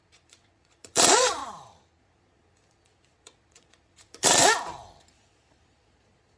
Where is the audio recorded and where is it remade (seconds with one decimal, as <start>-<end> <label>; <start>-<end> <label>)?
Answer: 0.0-1.4 remade; 1.4-2.0 recorded; 2.0-4.4 remade; 4.4-5.1 recorded; 5.1-6.4 remade